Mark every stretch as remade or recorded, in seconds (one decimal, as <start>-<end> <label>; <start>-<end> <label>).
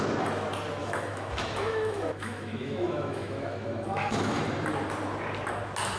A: 0.0-0.8 recorded; 0.8-4.4 remade; 4.4-6.0 recorded